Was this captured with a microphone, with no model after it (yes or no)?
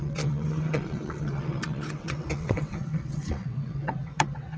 no